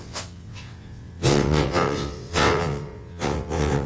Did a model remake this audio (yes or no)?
yes